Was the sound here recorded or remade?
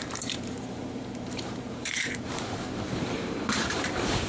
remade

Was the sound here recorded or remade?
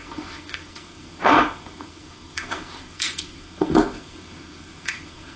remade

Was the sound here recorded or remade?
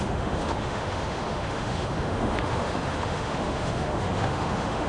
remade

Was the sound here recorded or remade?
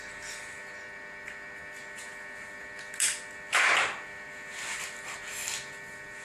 recorded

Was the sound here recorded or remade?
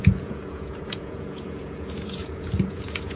remade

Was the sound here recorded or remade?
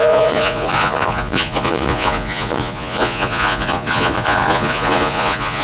remade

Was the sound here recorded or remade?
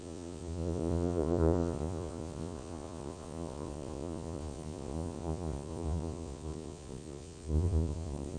remade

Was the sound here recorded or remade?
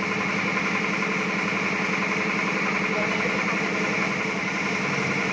recorded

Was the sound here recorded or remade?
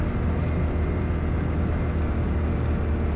recorded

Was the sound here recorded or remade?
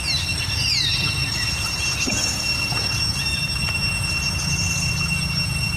recorded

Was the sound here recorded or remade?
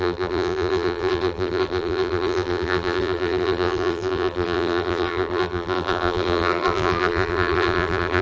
remade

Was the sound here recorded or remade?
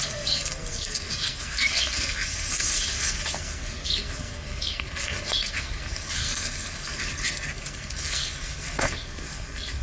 remade